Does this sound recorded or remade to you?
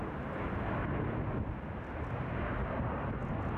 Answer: recorded